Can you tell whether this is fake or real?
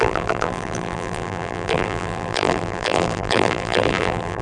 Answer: fake